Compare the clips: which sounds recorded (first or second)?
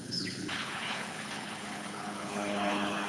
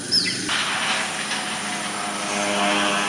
second